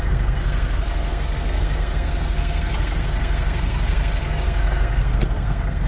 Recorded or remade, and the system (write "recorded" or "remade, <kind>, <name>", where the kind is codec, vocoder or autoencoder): remade, codec, SNAC